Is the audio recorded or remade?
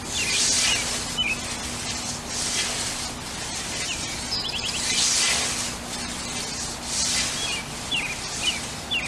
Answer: recorded